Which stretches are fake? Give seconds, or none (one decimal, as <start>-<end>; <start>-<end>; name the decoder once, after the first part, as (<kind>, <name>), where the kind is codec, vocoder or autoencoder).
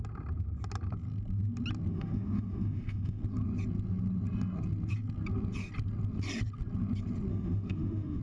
1.9-3.2 (autoencoder, DAC-VAE); 7.3-8.2